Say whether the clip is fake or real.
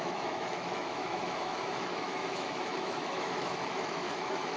fake